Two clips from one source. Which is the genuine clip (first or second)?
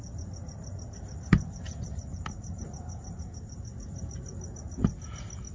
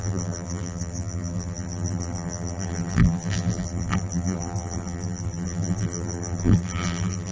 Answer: first